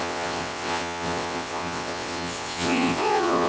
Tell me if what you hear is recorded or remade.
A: remade